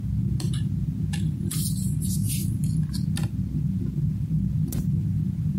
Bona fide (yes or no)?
yes